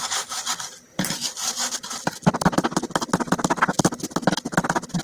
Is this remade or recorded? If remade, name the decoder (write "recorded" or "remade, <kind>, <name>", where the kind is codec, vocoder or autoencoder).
recorded